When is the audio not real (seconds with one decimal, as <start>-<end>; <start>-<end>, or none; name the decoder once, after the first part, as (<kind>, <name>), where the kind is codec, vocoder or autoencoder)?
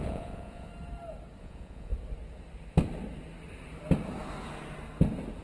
0.0-0.7 (vocoder, Vocos); 1.4-1.9